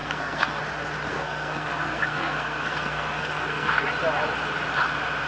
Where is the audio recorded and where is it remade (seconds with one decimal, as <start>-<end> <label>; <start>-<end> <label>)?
0.0-0.6 remade; 0.6-1.1 recorded; 1.1-3.9 remade; 3.9-5.3 recorded